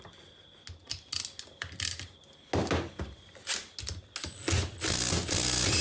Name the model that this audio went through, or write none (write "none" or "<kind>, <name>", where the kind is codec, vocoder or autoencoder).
none